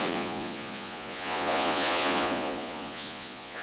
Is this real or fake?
fake